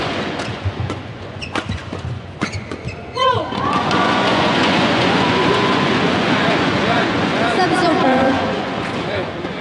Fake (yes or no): yes